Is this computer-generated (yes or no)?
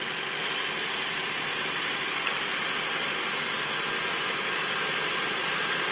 no